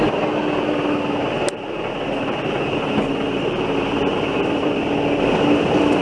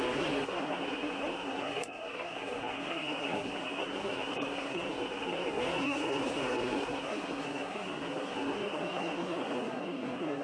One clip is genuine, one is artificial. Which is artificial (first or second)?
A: second